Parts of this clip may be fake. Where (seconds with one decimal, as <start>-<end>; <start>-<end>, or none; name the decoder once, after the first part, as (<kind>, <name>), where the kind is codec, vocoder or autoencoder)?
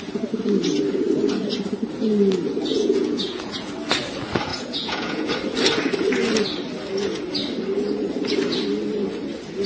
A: 2.7-3.7 (vocoder, Vocos); 4.5-5.3